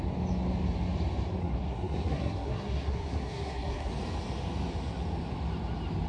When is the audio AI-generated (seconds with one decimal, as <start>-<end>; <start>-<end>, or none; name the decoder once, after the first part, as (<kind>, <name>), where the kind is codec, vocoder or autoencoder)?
1.4-3.9 (codec, SNAC)